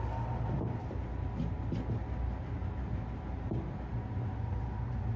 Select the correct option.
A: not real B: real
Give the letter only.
B